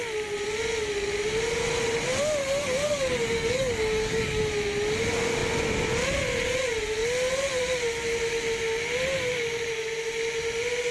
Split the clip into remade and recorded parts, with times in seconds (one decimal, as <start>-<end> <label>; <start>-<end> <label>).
0.0-2.4 recorded; 2.4-4.4 remade; 4.4-10.9 recorded